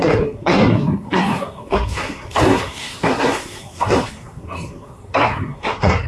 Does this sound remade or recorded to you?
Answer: remade